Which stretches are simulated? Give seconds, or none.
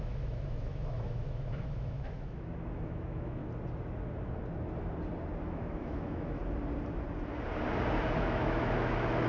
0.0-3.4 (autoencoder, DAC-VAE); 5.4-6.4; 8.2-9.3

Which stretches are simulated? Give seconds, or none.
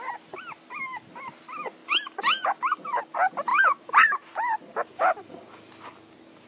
1.8-3.0 (vocoder, BigVGAN v2); 3.5-5.5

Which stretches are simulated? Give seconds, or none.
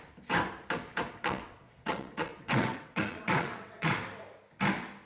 1.2-3.9 (vocoder, WaveNeXt)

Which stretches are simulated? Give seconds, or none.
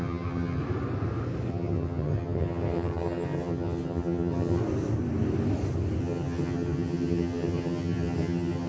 0.0-0.6 (vocoder, HiFi-GAN); 1.5-4.6; 6.0-8.7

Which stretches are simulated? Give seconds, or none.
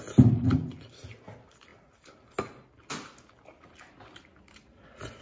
none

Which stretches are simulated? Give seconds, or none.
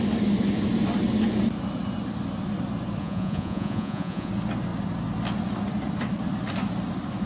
3.0-4.3 (vocoder, Vocos)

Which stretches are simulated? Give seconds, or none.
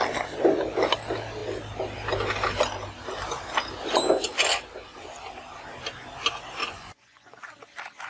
6.6-7.5 (vocoder, Vocos)